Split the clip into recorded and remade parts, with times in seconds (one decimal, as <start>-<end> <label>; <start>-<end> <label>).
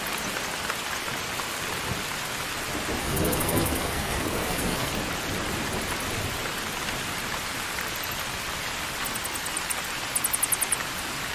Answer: 0.0-3.0 recorded; 3.0-4.9 remade; 4.9-11.3 recorded